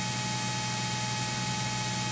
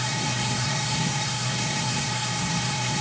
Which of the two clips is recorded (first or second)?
first